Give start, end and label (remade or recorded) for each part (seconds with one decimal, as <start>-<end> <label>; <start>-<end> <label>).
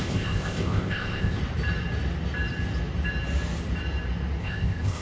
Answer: 0.0-1.4 remade; 1.4-4.4 recorded; 4.4-5.0 remade